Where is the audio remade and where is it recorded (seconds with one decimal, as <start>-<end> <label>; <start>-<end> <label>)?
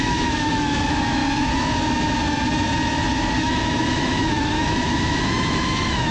0.0-1.2 remade; 1.2-3.4 recorded; 3.4-6.1 remade